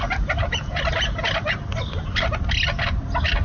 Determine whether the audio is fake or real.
real